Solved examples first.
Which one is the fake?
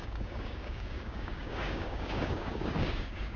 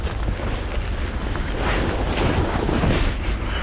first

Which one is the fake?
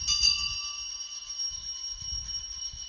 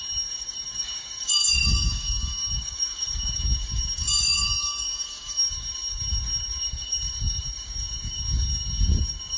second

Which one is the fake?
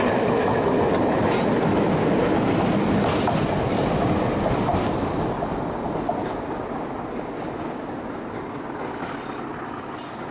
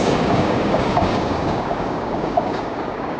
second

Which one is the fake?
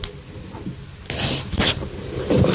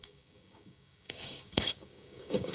second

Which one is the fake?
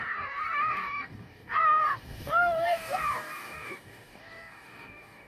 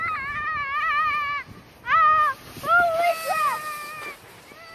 first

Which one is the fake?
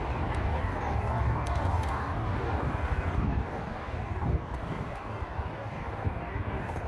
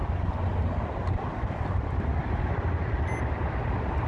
first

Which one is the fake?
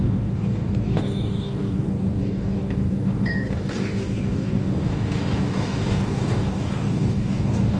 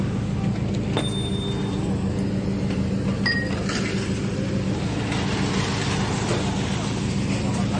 first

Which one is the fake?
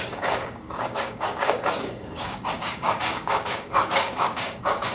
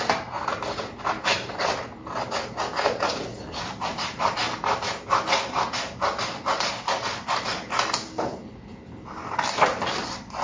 first